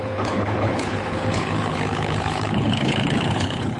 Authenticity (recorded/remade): remade